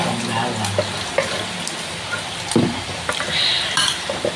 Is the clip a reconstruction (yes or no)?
no